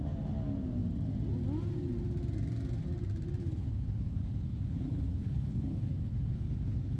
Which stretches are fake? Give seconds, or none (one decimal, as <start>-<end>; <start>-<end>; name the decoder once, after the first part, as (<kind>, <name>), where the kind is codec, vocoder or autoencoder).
3.4-7.0 (codec, HILCodec)